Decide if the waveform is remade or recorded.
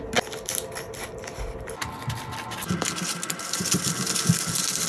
recorded